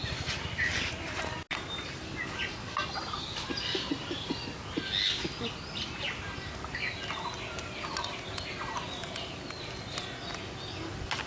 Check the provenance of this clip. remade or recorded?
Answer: recorded